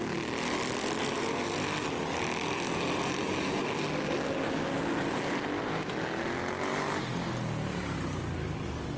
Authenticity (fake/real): real